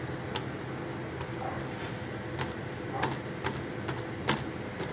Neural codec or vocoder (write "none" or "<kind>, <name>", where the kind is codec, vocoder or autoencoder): none